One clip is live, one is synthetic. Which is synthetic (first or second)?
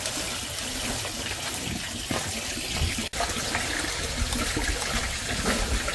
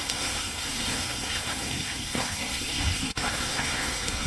second